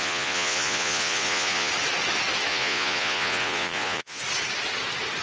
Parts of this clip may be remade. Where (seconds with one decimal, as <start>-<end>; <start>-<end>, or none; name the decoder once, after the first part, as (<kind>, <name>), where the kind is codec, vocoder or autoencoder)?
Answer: 0.0-1.7 (vocoder, Vocos); 2.5-4.2